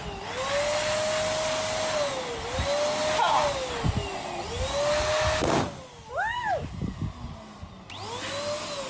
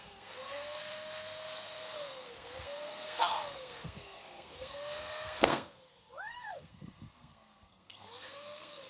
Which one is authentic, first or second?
first